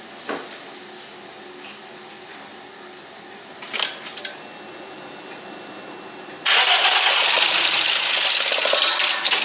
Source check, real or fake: real